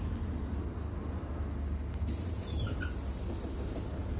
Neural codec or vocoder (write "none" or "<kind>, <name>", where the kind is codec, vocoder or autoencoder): none